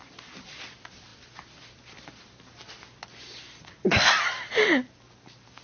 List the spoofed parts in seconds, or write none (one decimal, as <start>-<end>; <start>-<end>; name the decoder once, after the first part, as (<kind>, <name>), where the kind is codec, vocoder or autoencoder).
none